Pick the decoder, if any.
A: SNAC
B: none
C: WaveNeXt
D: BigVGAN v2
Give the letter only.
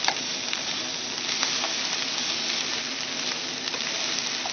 B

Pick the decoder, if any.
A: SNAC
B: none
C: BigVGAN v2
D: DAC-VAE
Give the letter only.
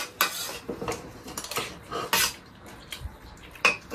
B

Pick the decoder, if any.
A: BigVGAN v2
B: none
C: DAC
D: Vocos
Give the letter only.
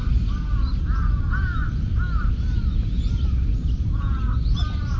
B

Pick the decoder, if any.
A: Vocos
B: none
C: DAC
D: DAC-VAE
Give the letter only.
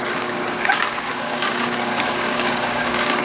C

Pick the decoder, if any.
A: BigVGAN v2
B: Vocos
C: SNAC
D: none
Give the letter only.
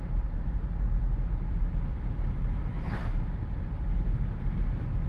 D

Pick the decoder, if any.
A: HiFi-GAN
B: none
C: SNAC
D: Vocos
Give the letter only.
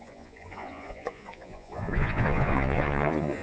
D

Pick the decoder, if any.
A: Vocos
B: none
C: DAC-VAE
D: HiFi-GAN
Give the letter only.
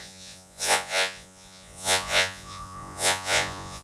A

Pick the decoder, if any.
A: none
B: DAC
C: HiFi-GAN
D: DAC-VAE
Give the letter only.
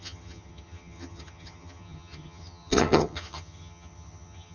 C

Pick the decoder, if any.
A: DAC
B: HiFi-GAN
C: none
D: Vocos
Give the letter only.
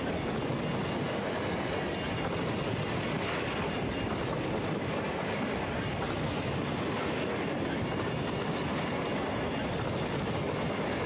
C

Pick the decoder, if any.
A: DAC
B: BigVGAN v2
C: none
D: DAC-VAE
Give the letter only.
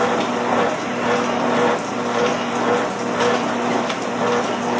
C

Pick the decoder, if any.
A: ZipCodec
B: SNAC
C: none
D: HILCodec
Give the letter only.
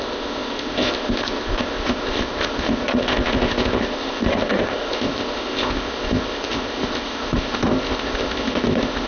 A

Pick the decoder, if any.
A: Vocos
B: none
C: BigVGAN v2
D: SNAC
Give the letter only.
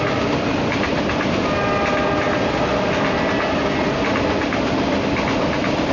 B